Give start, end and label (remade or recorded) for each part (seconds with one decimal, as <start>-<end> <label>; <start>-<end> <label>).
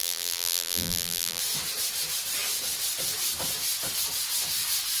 0.0-1.4 remade; 1.4-5.0 recorded